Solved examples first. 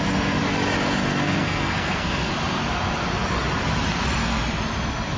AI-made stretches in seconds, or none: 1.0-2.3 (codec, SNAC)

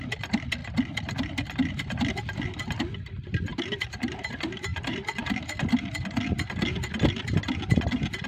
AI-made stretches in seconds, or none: 3.5-4.2 (vocoder, BigVGAN v2); 4.7-5.4

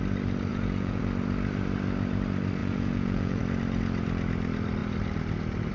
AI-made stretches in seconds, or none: 0.5-1.0 (vocoder, Vocos); 2.6-3.4

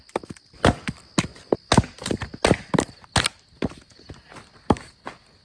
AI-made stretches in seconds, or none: none

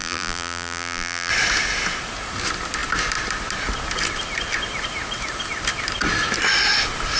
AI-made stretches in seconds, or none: 0.0-1.3 (vocoder, BigVGAN v2)

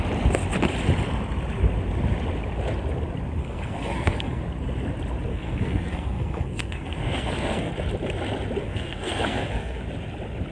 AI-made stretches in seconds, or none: 3.4-4.4 (codec, SNAC); 5.3-7.7; 8.6-9.8

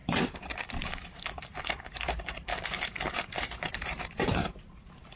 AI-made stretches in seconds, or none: 0.0-0.6 (vocoder, BigVGAN v2); 2.5-4.6